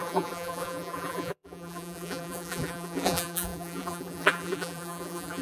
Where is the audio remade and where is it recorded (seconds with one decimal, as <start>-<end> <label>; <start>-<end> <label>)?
0.0-5.4 remade